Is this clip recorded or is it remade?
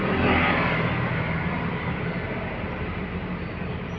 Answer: recorded